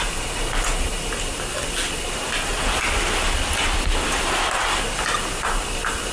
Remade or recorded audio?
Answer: recorded